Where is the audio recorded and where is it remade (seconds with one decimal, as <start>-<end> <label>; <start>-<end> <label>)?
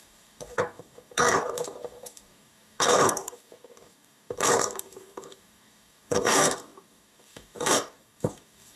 0.0-8.8 remade